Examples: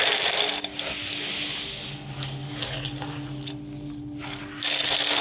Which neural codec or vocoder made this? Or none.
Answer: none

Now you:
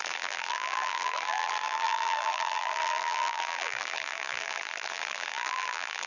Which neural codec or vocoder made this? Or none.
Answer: vocoder, BigVGAN v2